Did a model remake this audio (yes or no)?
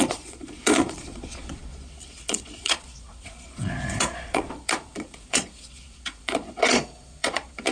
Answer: yes